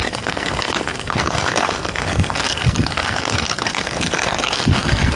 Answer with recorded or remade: remade